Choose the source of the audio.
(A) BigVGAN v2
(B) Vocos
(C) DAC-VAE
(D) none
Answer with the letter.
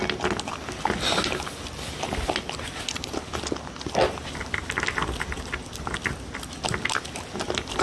D